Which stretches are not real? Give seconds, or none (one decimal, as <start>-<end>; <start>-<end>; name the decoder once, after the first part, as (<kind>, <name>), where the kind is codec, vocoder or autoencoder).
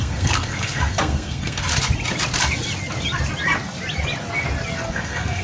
0.0-1.7 (codec, SNAC); 4.9-5.4